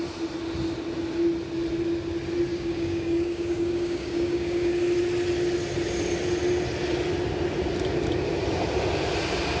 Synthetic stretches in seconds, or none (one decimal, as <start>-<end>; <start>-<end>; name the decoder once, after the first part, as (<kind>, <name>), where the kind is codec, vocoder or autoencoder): 2.5-4.7 (codec, DAC)

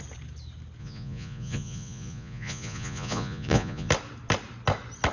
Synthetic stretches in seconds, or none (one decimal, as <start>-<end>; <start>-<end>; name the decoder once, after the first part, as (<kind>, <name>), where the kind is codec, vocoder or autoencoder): 0.8-3.9 (vocoder, Vocos)

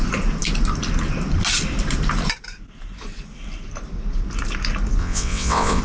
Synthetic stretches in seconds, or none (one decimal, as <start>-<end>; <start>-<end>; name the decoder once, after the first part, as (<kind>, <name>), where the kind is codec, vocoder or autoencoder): 5.0-5.8 (vocoder, WaveNeXt)

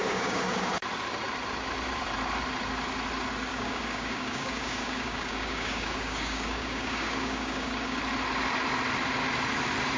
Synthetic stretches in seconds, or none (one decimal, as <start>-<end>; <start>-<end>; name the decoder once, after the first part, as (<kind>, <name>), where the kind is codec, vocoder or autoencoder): 0.0-0.7 (codec, DAC); 3.5-8.0

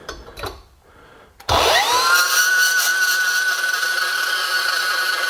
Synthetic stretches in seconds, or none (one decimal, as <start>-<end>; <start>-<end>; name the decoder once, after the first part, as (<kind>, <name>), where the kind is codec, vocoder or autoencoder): 0.0-1.7 (vocoder, BigVGAN v2)

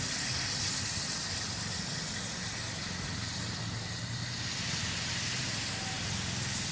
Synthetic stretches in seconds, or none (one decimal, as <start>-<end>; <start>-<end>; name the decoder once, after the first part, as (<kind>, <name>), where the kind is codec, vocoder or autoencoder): none

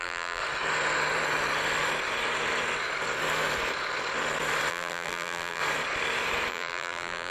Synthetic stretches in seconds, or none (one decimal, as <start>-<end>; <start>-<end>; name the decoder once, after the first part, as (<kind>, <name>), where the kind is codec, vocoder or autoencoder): 0.0-0.4 (vocoder, BigVGAN v2); 4.7-5.6; 6.5-7.3